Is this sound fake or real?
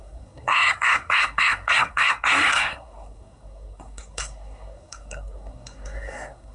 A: fake